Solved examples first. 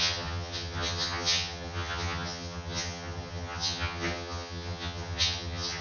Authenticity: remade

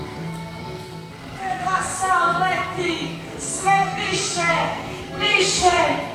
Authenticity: remade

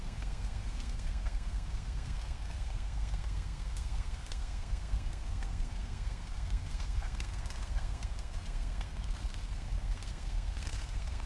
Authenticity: remade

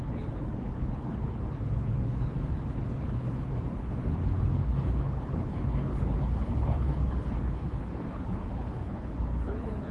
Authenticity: remade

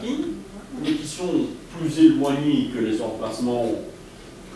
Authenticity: recorded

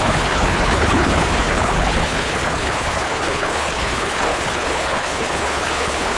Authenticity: remade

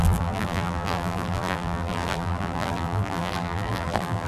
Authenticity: remade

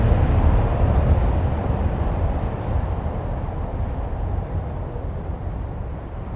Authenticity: remade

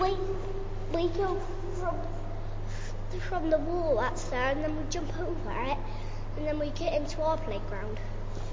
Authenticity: recorded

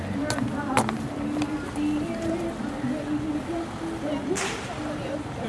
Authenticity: recorded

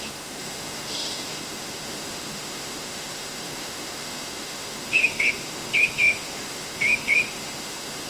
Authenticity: remade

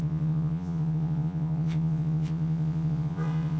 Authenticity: remade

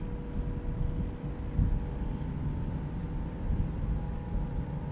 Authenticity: recorded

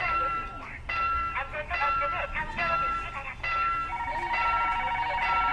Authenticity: recorded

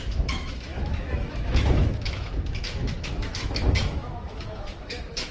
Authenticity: remade